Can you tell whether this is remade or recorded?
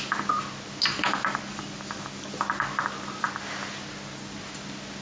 recorded